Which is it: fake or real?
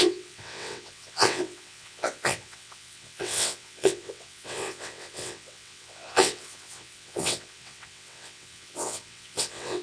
fake